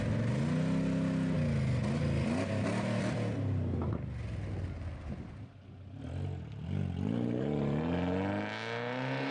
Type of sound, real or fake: real